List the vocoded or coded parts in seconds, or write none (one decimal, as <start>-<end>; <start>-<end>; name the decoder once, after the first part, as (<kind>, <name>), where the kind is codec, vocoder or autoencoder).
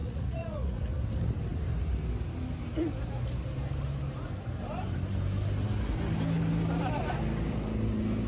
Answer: 0.0-0.8 (vocoder, Vocos)